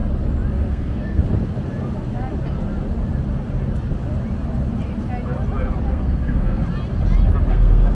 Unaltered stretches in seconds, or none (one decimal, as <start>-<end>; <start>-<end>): 0.0-0.7; 1.2-5.9; 6.6-7.5